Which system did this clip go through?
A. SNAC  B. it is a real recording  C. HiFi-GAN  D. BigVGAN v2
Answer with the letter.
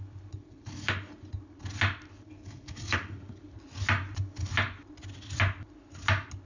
B